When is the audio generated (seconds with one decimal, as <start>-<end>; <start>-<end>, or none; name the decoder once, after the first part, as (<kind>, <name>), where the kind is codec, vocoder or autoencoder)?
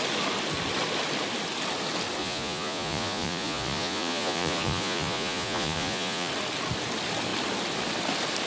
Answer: 2.2-6.3 (vocoder, Vocos)